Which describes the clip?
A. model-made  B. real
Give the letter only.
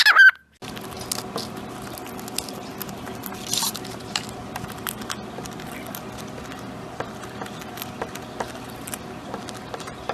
B